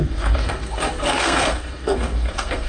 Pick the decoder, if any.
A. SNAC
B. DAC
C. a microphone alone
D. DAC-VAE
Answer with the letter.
A